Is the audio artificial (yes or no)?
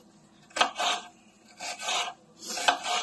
no